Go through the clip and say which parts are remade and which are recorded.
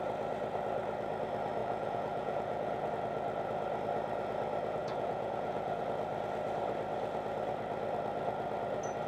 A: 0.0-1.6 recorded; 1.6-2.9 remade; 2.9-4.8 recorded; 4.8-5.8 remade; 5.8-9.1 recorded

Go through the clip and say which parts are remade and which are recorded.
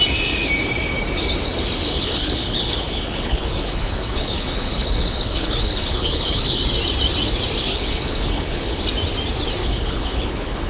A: 0.0-1.9 recorded; 1.9-6.6 remade; 6.6-7.7 recorded; 7.7-8.8 remade; 8.8-9.6 recorded; 9.6-10.7 remade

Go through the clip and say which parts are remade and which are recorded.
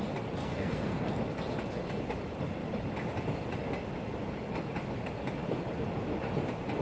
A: 0.0-0.4 recorded; 0.4-1.2 remade; 1.2-6.8 recorded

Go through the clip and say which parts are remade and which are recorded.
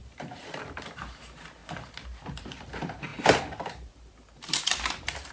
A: 0.0-1.6 remade; 1.6-2.4 recorded; 2.4-5.3 remade